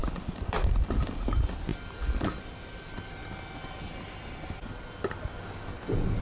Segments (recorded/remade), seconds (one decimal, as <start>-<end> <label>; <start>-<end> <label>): 0.0-6.2 recorded